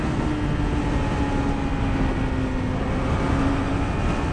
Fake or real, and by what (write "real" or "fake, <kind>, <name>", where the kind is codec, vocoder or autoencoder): real